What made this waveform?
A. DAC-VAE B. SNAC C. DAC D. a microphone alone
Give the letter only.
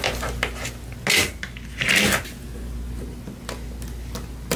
D